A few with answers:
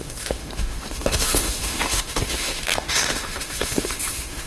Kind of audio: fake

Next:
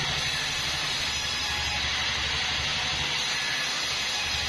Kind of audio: real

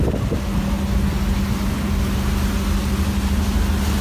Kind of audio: real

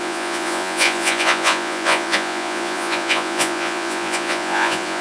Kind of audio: fake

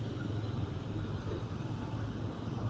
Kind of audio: real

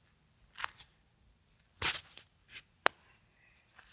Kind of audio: real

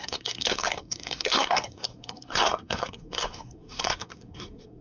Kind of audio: fake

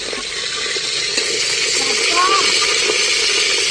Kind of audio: real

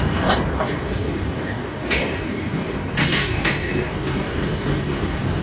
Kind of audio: fake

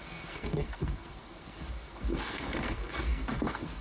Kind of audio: fake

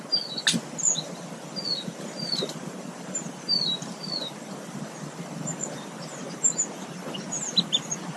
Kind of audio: real